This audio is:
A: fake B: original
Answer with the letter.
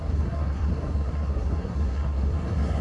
A